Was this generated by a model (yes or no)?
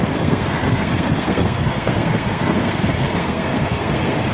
yes